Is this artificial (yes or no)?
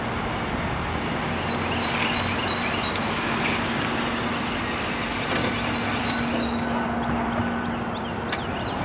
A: no